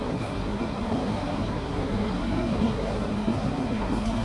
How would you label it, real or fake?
fake